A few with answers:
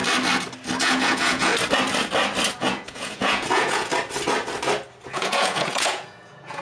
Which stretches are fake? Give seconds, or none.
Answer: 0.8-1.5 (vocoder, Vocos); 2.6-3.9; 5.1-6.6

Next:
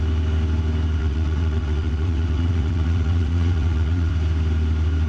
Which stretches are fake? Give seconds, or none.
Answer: 1.0-4.1 (vocoder, WaveNeXt)

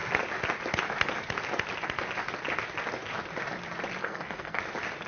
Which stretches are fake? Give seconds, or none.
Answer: 4.0-4.6 (codec, SNAC)

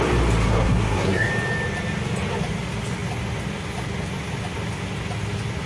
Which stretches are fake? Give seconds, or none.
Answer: 0.4-1.3 (codec, SNAC)